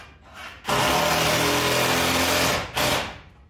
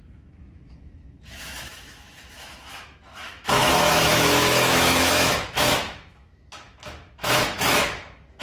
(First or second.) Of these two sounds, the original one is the first